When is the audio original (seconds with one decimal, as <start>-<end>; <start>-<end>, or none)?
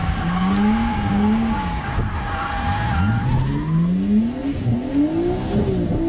1.9-6.1